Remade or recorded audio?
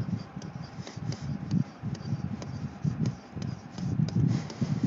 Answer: remade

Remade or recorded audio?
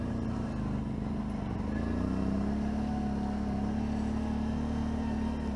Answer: recorded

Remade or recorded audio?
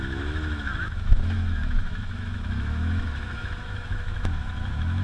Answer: remade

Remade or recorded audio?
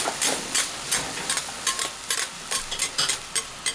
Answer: recorded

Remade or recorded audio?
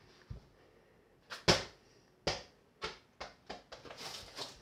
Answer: recorded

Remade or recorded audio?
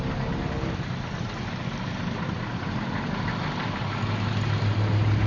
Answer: recorded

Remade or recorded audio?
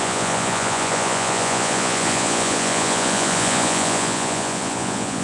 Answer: remade